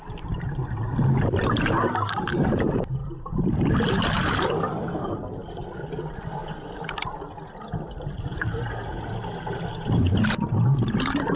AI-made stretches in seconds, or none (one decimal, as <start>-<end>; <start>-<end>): 3.0-5.1; 6.4-7.6